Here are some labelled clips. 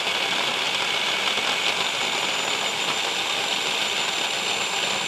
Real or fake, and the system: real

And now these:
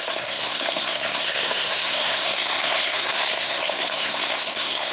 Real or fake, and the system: fake, codec, SNAC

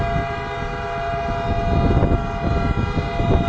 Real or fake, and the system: real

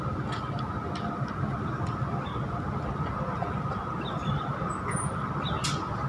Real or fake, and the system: real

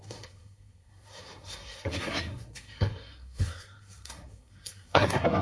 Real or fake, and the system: fake, codec, SNAC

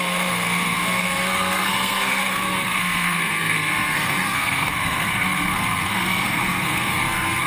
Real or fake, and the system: fake, codec, SNAC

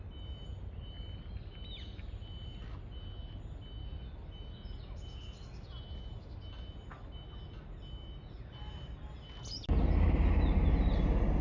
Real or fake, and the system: real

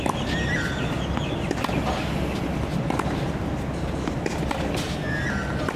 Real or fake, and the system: real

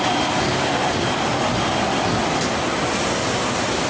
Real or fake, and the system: real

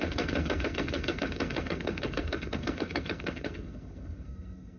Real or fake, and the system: fake, codec, SNAC